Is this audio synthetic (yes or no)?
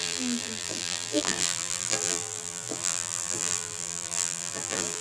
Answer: yes